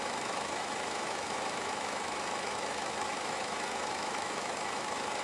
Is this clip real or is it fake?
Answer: fake